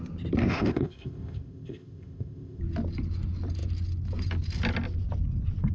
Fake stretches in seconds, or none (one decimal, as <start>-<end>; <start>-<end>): 0.4-2.6